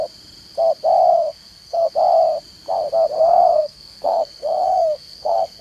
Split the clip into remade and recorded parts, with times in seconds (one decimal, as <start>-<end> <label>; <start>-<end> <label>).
0.0-1.1 recorded; 1.1-1.9 remade; 1.9-3.2 recorded; 3.2-5.6 remade